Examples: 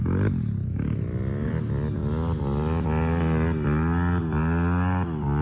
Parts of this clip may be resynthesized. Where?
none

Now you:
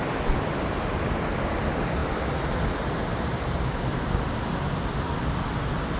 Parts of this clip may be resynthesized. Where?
none

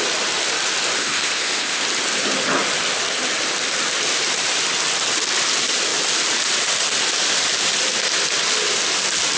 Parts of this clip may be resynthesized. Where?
1.0-1.8 (codec, ZipCodec)

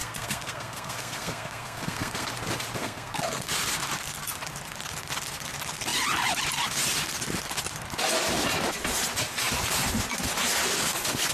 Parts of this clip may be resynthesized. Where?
0.0-2.3 (codec, SNAC); 2.8-3.5

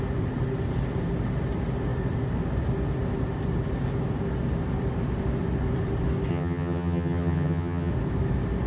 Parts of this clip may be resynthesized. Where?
6.3-7.9 (vocoder, HiFi-GAN)